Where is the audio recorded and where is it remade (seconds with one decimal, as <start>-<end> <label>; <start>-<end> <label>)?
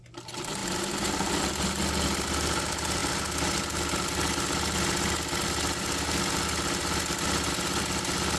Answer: 0.0-8.4 recorded